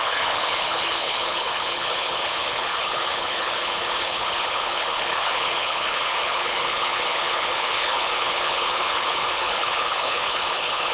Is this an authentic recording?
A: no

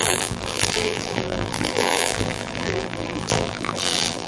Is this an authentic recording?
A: no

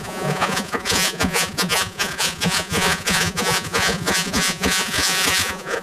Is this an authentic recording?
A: no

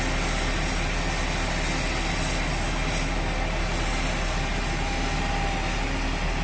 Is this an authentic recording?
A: yes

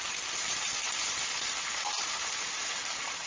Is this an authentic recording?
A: no